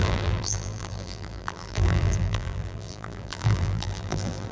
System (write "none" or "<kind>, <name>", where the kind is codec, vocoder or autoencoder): vocoder, BigVGAN v2